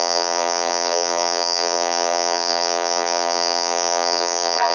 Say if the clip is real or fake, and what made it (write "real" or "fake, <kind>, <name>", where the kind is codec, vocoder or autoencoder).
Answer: fake, vocoder, BigVGAN v2